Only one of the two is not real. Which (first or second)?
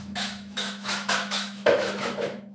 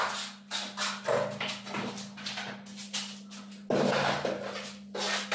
first